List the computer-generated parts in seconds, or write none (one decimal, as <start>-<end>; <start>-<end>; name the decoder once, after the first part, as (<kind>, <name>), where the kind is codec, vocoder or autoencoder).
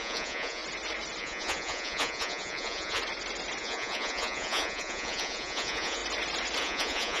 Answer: 0.0-0.6 (vocoder, Vocos); 1.2-3.0; 3.6-6.0; 6.6-7.2